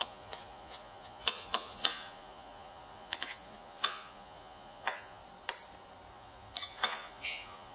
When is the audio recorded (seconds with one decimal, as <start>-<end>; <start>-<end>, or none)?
5.2-6.1